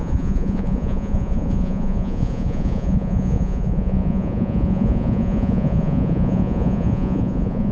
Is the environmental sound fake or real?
fake